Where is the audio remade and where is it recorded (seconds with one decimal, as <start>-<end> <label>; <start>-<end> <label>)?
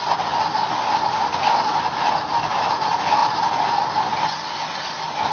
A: 0.0-5.3 recorded